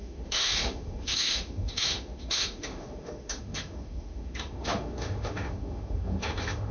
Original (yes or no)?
no